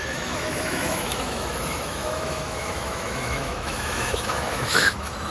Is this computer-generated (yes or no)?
yes